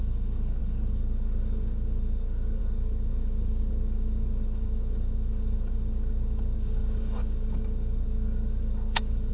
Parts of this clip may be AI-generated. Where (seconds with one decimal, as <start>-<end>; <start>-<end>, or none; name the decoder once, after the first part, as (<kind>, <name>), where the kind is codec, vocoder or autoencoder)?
0.0-9.3 (codec, DAC)